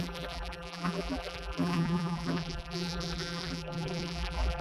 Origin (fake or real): fake